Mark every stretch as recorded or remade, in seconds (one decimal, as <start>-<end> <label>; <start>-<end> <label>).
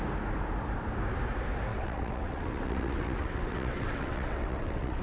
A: 0.0-1.7 recorded; 1.7-5.0 remade